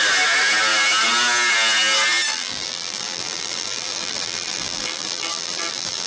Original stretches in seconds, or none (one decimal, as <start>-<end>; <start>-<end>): 0.0-2.3